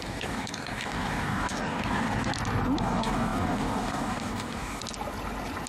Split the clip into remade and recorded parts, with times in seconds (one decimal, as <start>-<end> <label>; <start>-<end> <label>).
0.0-2.3 remade; 2.3-2.8 recorded; 2.8-4.8 remade; 4.8-5.7 recorded